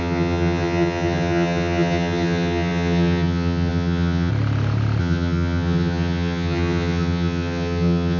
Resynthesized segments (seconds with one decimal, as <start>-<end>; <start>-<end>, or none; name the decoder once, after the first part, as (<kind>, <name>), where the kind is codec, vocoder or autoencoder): 0.0-4.3 (vocoder, HiFi-GAN); 5.0-8.2